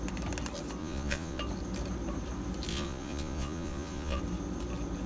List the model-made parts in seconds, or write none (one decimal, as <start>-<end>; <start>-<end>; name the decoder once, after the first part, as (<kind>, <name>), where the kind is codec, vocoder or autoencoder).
0.8-1.4 (vocoder, Vocos); 2.7-4.2